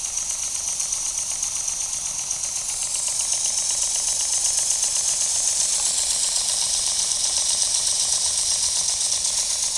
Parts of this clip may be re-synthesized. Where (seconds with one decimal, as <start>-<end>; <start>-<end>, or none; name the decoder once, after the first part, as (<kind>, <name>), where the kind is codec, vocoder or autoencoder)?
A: 5.3-9.1 (vocoder, BigVGAN v2)